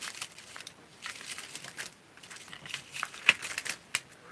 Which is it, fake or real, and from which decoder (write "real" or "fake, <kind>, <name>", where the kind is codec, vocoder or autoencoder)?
real